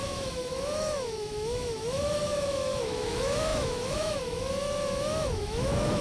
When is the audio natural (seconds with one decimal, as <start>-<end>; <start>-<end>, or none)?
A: none

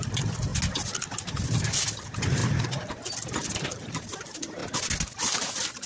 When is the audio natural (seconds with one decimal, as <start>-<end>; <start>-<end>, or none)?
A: 0.5-2.0; 2.4-3.5; 4.6-5.9

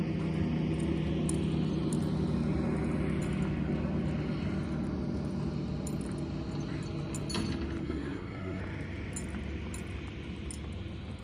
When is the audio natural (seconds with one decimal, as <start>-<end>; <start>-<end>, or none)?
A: 0.0-7.8; 8.6-11.2

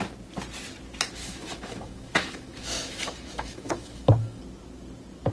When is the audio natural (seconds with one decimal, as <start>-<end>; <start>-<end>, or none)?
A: 0.0-1.2; 4.4-5.3

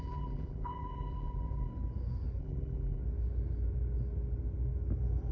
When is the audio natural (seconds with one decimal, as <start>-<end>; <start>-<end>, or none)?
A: 1.7-2.4; 3.0-5.3